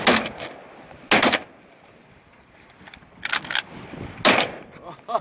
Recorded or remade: recorded